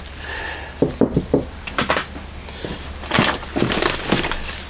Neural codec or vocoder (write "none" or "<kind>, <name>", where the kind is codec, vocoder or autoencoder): none